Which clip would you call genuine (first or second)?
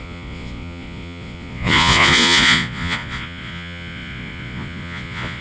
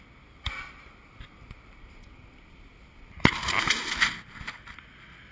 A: second